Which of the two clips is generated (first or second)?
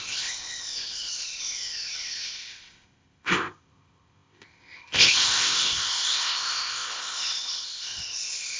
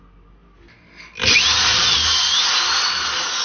first